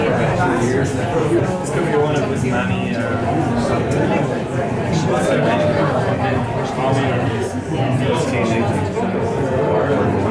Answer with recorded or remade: recorded